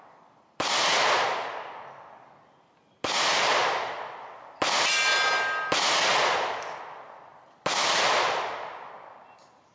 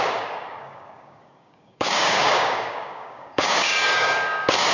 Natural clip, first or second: first